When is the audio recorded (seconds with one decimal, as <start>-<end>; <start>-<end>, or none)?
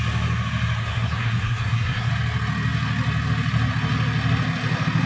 0.0-0.8; 2.1-5.1